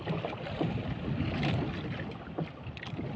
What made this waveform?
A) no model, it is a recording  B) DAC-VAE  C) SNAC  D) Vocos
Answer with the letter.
A